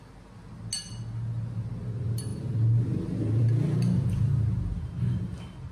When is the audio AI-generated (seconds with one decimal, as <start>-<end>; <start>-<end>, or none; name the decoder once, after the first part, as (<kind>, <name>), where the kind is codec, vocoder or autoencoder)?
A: none